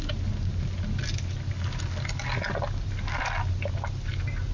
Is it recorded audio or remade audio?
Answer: recorded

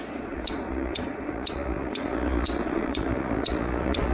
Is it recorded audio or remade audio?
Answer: remade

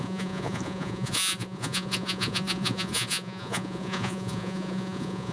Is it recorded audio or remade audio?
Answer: remade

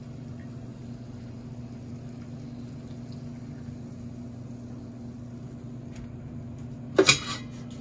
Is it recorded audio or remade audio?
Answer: recorded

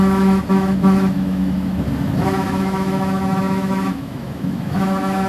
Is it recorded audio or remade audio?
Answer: remade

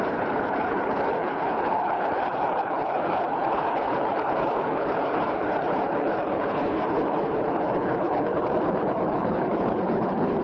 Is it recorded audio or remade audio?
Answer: remade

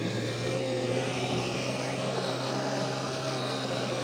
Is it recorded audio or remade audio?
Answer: remade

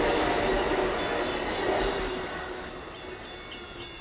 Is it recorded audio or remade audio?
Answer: recorded